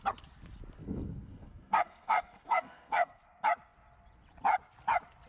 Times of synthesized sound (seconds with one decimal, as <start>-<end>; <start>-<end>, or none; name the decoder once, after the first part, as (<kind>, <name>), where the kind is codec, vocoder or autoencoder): 0.8-3.2 (codec, SNAC)